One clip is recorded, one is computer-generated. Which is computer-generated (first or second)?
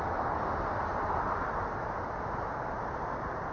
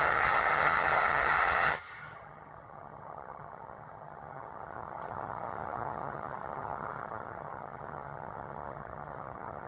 second